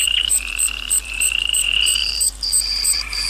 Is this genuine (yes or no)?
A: no